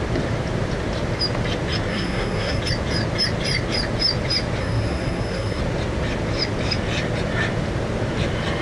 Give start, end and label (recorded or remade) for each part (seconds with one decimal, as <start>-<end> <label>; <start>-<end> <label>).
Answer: 0.0-1.9 recorded; 1.9-2.6 remade; 2.6-4.6 recorded; 4.6-5.6 remade; 5.6-8.6 recorded